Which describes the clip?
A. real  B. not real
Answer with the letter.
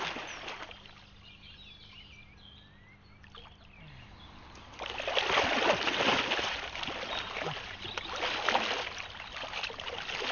A